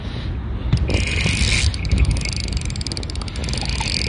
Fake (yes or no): no